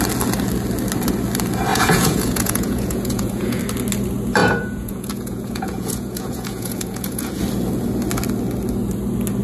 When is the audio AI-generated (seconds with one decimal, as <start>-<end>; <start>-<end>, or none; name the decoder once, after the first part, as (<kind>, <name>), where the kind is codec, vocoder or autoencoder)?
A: 1.7-3.6 (vocoder, Vocos); 4.4-7.4